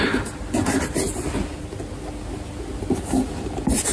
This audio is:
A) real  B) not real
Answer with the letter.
A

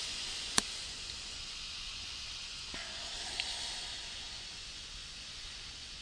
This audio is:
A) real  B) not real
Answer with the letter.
B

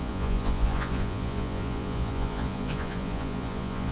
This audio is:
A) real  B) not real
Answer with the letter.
B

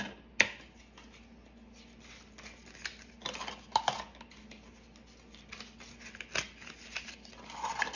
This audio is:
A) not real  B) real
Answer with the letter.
B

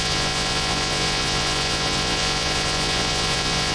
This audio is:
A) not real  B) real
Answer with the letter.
A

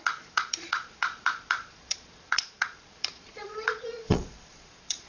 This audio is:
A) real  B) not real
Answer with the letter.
B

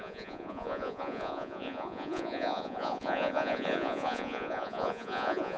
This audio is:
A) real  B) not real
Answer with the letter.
B